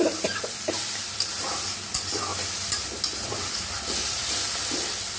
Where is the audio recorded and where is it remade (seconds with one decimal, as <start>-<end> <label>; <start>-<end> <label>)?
0.0-2.3 remade; 2.3-3.3 recorded; 3.3-5.2 remade